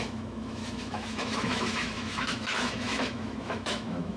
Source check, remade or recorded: remade